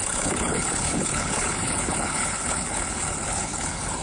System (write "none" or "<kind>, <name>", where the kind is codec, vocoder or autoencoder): codec, HILCodec